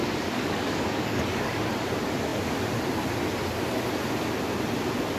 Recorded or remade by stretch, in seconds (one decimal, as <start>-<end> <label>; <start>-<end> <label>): 0.0-1.6 remade; 1.6-5.2 recorded